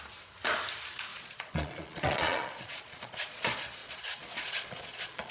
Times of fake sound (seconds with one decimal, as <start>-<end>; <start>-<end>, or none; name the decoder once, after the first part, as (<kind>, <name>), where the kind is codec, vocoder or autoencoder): 1.1-3.4 (vocoder, Vocos); 3.8-5.3